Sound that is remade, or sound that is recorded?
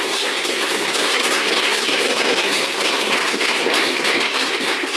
remade